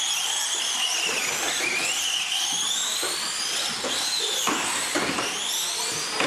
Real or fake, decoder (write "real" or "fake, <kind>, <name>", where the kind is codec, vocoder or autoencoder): real